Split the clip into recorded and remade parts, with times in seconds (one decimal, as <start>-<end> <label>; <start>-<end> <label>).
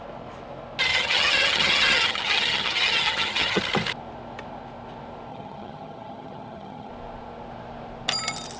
0.0-0.9 recorded; 0.9-3.6 remade; 3.6-5.3 recorded; 5.3-6.9 remade; 6.9-8.6 recorded